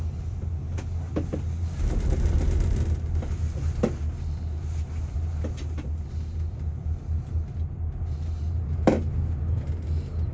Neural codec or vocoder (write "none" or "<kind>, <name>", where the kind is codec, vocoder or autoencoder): none